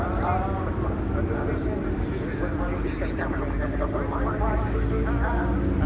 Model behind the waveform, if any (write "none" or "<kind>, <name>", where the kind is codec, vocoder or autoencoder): none